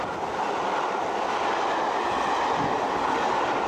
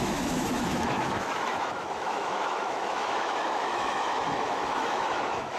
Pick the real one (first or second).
first